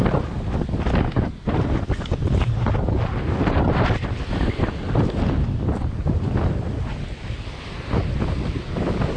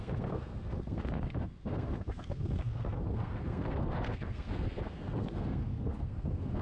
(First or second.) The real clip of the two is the first